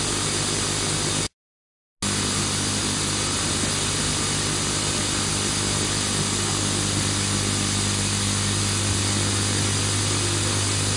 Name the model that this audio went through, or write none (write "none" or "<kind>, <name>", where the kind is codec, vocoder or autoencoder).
none